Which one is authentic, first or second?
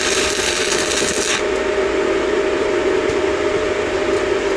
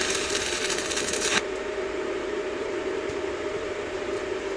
first